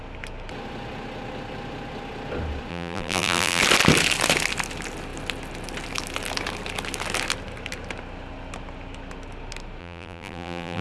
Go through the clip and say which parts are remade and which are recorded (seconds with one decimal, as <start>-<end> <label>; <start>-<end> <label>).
0.0-2.7 recorded; 2.7-3.6 remade; 3.6-9.8 recorded; 9.8-10.8 remade